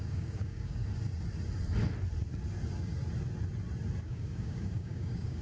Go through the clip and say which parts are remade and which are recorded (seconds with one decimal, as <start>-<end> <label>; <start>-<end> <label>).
0.0-0.8 remade; 0.8-4.0 recorded; 4.0-5.4 remade